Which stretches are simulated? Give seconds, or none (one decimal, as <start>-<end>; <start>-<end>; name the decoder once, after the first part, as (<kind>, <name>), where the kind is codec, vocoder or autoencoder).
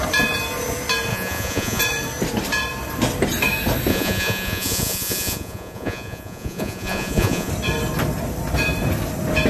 1.1-1.8 (vocoder, Vocos); 3.9-7.5